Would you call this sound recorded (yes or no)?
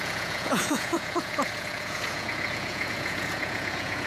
no